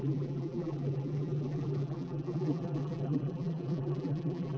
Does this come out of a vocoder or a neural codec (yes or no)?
yes